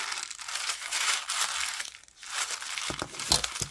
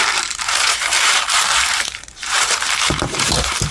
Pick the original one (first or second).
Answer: first